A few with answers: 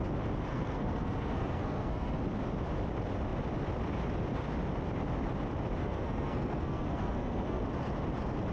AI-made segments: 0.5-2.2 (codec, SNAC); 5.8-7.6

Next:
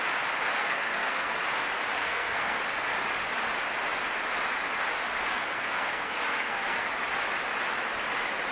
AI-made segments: 0.6-1.3 (codec, SNAC); 1.9-2.6; 5.3-6.9

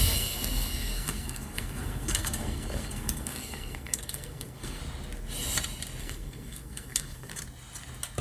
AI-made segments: 0.0-4.8 (codec, SNAC); 6.0-7.3